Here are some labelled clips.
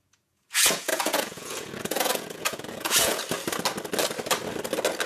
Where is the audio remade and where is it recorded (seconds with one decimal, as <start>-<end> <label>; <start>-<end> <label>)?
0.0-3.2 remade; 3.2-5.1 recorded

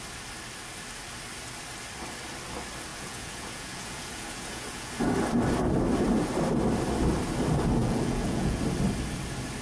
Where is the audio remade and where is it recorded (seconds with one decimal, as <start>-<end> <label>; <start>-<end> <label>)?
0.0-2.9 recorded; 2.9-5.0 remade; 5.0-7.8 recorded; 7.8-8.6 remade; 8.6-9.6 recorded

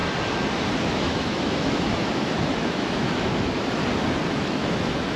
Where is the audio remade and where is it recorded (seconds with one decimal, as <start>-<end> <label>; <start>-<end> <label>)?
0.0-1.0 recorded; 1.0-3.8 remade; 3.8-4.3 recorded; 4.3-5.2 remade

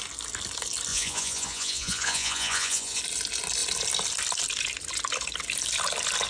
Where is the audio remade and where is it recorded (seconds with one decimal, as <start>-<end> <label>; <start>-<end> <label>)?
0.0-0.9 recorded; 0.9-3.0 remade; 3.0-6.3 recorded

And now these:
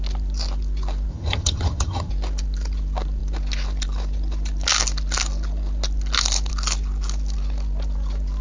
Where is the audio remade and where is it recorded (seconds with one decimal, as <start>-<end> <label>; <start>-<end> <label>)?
0.0-1.1 recorded; 1.1-2.1 remade; 2.1-8.4 recorded

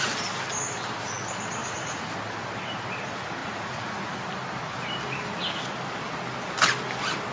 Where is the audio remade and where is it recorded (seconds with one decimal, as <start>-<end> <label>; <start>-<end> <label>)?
0.0-1.6 recorded; 1.6-2.1 remade; 2.1-3.4 recorded; 3.4-4.2 remade; 4.2-7.3 recorded

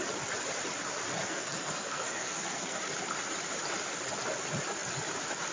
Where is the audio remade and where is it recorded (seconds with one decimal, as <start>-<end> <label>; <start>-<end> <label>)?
0.0-1.2 recorded; 1.2-2.8 remade; 2.8-5.5 recorded

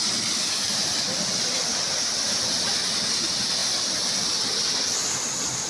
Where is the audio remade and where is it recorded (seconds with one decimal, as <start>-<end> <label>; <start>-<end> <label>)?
0.0-5.7 recorded